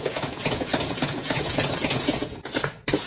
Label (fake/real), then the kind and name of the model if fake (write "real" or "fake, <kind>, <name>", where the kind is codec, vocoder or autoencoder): fake, vocoder, Vocos